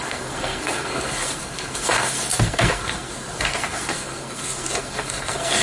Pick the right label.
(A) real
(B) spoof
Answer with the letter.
B